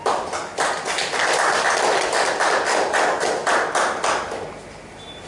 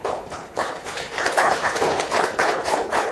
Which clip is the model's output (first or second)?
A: second